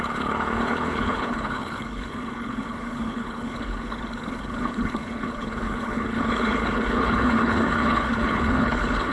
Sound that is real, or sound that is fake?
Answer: fake